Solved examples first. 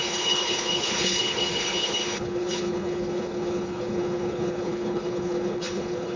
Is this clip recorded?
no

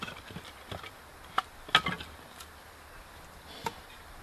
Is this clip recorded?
yes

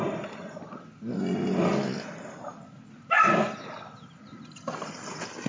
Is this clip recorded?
yes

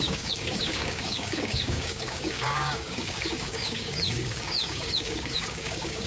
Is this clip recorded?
no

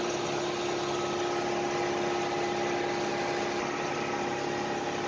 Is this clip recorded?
yes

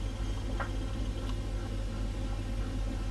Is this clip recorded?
yes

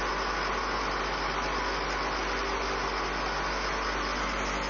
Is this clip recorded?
yes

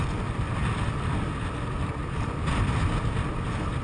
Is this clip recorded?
yes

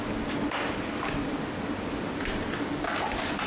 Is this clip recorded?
yes